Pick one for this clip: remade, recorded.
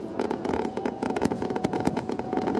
remade